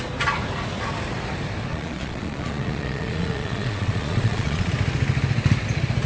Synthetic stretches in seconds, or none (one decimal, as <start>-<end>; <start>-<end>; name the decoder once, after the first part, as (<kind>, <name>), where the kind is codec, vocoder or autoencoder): 1.7-4.7 (vocoder, Vocos)